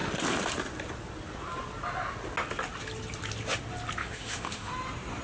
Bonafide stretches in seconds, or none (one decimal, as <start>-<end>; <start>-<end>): 0.0-4.0; 4.7-5.2